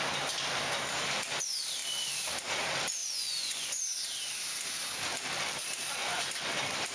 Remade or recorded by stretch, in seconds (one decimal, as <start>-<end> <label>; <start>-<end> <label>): 0.0-3.0 recorded; 3.0-3.8 remade; 3.8-6.0 recorded; 6.0-6.5 remade; 6.5-6.9 recorded